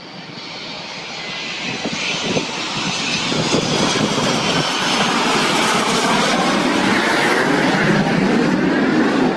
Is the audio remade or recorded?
recorded